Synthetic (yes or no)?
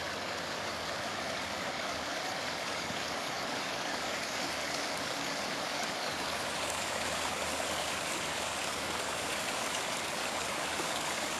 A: yes